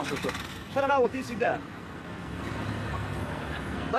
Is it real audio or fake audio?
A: fake